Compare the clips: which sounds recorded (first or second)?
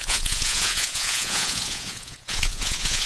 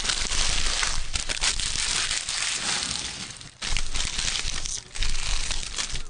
second